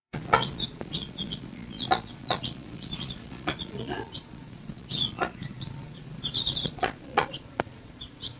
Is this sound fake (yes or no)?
yes